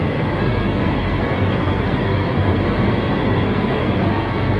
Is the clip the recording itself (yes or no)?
no